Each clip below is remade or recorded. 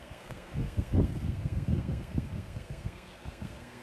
remade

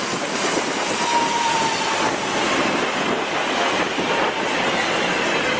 recorded